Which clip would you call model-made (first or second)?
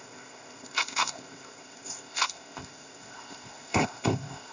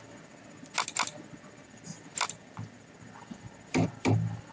first